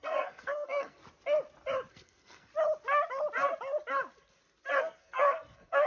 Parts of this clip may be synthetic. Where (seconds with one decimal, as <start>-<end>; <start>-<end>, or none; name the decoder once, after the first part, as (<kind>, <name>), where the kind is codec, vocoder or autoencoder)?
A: 0.0-1.0 (codec, SNAC); 1.9-2.5; 4.8-5.9